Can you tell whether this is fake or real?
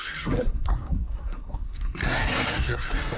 fake